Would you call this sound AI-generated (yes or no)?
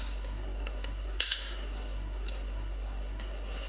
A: yes